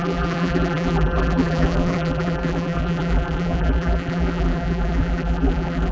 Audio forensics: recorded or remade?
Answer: remade